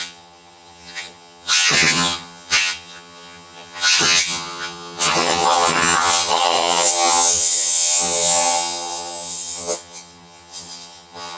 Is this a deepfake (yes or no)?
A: yes